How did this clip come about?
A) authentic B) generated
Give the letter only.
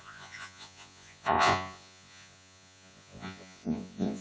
B